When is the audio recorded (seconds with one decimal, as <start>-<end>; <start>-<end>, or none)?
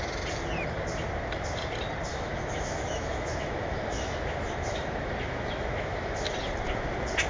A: 0.0-2.1; 6.3-7.3